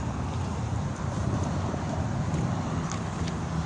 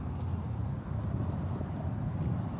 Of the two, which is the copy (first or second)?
first